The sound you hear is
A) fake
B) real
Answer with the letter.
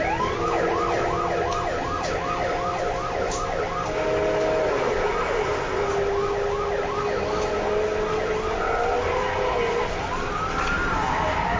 B